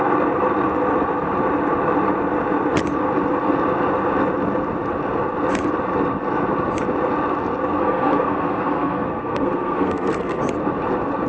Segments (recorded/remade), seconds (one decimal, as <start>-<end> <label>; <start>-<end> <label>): 0.0-7.8 recorded; 7.8-10.4 remade; 10.4-11.3 recorded